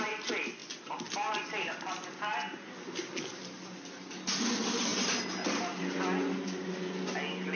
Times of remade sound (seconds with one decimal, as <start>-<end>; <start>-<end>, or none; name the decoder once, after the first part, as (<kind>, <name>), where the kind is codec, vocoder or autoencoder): none

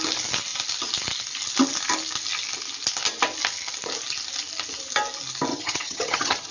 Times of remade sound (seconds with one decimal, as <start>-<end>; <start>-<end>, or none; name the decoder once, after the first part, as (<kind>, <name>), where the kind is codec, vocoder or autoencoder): 5.5-6.5 (vocoder, HiFi-GAN)

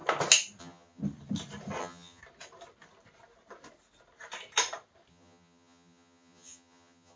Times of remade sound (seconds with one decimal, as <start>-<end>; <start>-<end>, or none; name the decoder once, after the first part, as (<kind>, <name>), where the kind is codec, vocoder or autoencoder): 0.6-1.0 (vocoder, HiFi-GAN); 1.8-2.2; 5.1-7.2

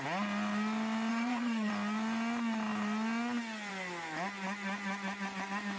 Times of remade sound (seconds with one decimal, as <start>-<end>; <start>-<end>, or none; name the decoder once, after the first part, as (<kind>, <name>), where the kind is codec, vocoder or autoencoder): 1.1-1.7 (vocoder, HiFi-GAN)

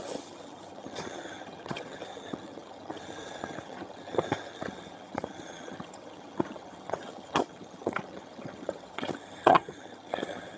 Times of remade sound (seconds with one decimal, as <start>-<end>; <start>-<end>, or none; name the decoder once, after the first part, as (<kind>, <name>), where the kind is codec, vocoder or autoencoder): 0.0-10.6 (vocoder, HiFi-GAN)

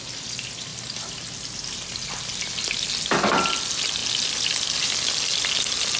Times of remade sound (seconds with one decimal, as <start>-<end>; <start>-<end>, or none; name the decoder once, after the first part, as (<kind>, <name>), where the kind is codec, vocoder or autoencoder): none

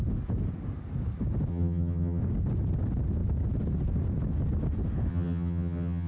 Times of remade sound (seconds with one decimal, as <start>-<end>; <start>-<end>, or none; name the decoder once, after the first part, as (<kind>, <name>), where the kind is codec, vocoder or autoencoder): 1.5-2.2 (vocoder, HiFi-GAN); 5.1-6.1